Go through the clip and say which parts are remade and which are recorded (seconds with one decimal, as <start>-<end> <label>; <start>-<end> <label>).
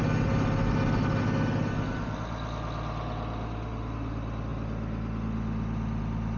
0.0-6.4 recorded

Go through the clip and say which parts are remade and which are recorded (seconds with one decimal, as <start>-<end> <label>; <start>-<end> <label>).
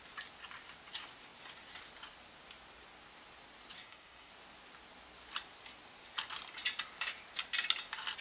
0.0-3.8 recorded; 3.8-4.3 remade; 4.3-8.2 recorded